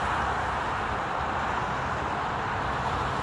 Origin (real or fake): real